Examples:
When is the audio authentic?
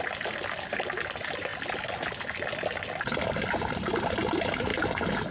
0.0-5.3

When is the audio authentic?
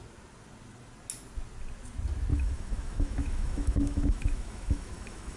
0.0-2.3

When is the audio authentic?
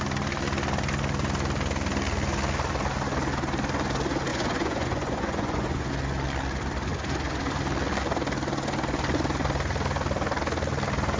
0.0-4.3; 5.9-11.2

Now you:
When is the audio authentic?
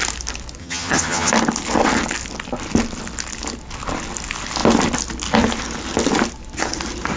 0.0-0.6; 1.3-7.2